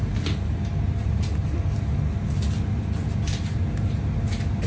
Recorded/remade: recorded